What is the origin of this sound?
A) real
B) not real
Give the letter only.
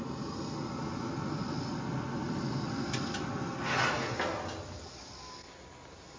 A